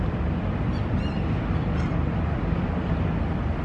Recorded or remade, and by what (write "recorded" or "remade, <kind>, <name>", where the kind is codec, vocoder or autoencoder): recorded